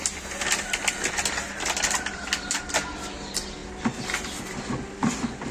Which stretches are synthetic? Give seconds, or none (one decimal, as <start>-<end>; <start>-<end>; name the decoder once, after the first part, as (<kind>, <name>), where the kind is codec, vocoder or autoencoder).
none